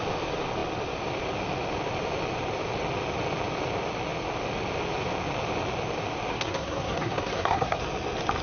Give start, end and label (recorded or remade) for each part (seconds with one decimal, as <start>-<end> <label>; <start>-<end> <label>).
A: 0.0-6.3 recorded; 6.3-7.8 remade; 7.8-8.4 recorded